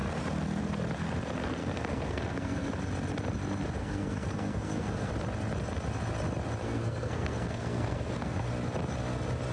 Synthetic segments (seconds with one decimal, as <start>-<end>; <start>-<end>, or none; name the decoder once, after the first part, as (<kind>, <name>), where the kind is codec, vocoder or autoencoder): 1.6-2.7 (codec, SNAC); 3.8-5.1; 6.6-8.5